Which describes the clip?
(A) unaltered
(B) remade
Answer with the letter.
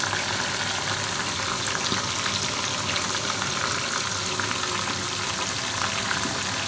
A